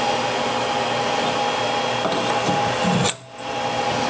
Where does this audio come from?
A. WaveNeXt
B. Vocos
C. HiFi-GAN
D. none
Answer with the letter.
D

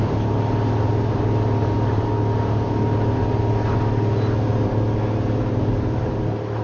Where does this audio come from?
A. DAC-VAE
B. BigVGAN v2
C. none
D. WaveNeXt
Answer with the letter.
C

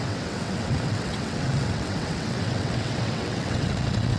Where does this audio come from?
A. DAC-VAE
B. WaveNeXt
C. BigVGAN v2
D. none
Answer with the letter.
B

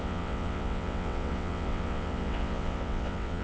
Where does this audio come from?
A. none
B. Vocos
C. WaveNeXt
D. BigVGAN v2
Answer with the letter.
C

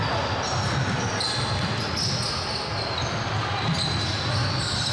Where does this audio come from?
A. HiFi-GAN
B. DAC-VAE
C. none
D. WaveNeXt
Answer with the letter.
C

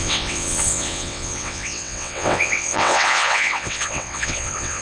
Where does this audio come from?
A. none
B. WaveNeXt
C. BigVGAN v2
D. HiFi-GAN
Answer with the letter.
B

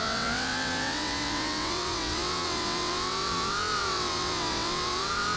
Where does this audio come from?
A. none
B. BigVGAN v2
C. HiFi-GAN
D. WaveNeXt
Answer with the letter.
D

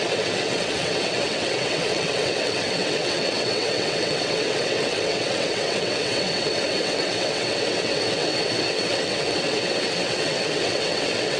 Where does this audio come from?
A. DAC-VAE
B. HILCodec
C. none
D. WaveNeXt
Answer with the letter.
D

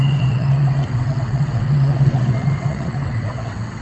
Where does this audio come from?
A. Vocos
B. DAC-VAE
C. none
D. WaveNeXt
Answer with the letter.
D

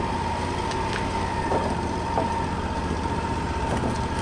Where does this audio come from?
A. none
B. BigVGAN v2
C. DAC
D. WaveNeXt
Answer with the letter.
A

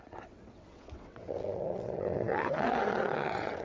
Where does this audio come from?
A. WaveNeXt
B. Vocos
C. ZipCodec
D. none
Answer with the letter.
A